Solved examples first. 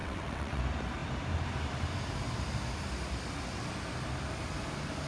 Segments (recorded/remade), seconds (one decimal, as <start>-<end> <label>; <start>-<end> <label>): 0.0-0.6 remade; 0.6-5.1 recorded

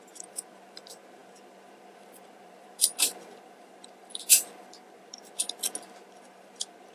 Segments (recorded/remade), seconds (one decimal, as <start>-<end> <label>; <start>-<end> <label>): 0.0-5.2 remade; 5.2-5.8 recorded; 5.8-6.9 remade

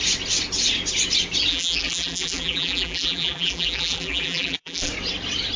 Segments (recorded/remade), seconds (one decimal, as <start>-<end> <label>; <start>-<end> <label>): 0.0-1.5 recorded; 1.5-4.9 remade; 4.9-5.6 recorded

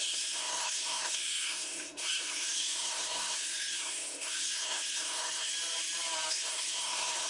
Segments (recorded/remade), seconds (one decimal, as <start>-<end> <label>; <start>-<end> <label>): 0.0-5.5 remade; 5.5-6.3 recorded; 6.3-7.3 remade

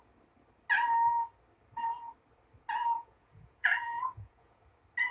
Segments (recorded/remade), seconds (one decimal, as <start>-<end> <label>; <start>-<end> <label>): 0.0-2.8 recorded; 2.8-4.6 remade; 4.6-5.1 recorded

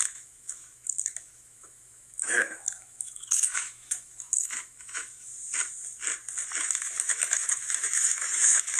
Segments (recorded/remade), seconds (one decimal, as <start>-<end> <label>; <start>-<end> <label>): 0.0-5.3 remade; 5.3-6.6 recorded; 6.6-8.8 remade